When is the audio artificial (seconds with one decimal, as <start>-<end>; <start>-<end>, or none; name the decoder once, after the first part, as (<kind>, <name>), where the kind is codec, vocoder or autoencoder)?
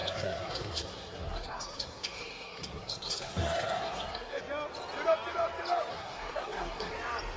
0.0-4.4 (codec, SNAC); 5.9-6.9